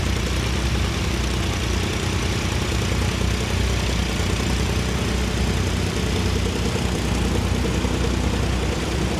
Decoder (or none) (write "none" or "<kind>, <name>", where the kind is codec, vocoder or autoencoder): none